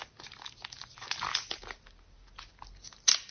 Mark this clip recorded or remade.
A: recorded